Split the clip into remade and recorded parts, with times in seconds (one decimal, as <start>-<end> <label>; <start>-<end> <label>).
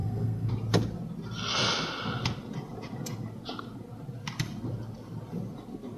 0.0-0.5 remade; 0.5-6.0 recorded